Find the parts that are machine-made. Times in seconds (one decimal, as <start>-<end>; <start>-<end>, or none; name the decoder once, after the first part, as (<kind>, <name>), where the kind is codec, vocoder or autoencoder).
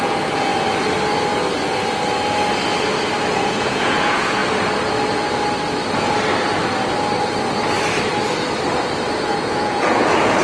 0.0-0.5 (vocoder, Vocos); 3.3-4.4; 9.2-10.4